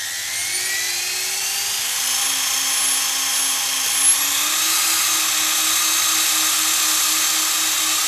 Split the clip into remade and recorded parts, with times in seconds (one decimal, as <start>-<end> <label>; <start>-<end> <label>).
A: 0.0-8.1 recorded